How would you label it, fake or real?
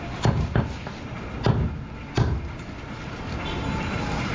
real